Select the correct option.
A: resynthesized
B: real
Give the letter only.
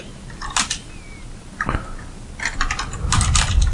B